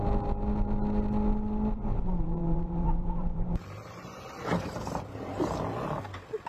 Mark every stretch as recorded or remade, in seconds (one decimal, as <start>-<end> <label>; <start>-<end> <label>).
0.0-1.9 recorded; 1.9-4.3 remade; 4.3-6.5 recorded